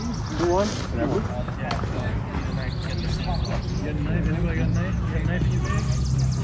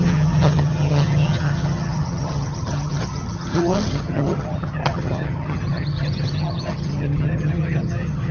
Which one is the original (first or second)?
first